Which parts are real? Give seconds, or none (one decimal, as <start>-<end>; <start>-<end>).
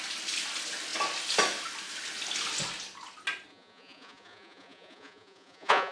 0.0-3.5